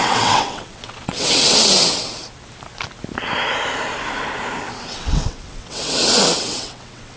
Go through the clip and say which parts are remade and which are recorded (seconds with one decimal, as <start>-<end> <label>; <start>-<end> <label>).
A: 0.0-2.2 remade; 2.2-4.6 recorded; 4.6-7.2 remade